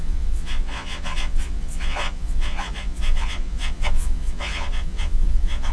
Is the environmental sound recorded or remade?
remade